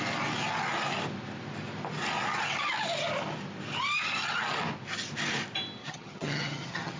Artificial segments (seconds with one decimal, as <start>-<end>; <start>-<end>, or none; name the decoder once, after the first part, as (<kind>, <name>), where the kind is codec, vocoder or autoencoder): 5.8-7.0 (vocoder, HiFi-GAN)